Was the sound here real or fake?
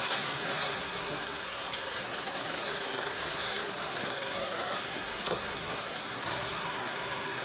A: fake